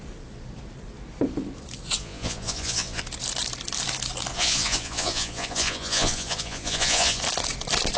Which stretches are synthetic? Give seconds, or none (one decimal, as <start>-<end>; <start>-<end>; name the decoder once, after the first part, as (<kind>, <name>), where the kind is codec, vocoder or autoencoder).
2.0-3.0 (vocoder, Vocos); 4.3-7.2

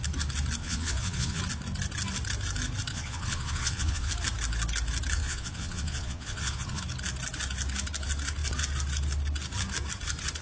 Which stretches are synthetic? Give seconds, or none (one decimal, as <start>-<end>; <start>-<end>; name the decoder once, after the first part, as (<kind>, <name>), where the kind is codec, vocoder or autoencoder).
0.6-1.4 (vocoder, Vocos); 2.9-4.1; 5.2-6.8

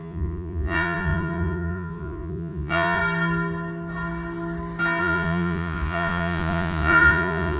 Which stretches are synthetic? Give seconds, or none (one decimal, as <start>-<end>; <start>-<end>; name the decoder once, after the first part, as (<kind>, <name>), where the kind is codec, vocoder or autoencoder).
0.0-3.0 (vocoder, Vocos); 5.0-7.6

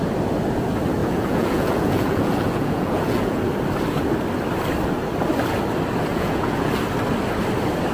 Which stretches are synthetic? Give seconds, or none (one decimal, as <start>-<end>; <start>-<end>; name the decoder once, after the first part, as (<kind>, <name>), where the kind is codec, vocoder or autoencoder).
1.0-3.4 (vocoder, Vocos); 6.1-6.7

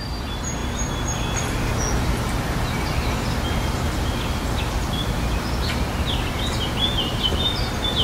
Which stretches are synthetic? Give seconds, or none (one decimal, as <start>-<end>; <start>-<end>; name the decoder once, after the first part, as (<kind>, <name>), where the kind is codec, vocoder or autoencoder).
none

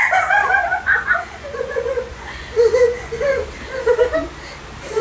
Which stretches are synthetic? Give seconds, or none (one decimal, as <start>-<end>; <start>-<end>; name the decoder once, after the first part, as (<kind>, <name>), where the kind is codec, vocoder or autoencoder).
0.5-3.5 (vocoder, Vocos)

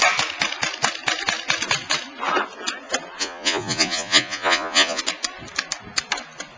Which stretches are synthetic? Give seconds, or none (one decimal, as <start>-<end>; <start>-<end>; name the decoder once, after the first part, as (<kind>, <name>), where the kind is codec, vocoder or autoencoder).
3.2-5.0 (vocoder, Vocos)